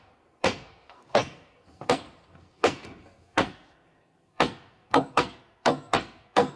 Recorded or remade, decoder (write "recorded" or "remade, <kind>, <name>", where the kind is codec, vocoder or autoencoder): remade, codec, SNAC